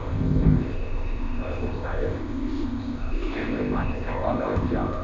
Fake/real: fake